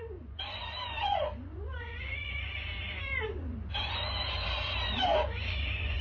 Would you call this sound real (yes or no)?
no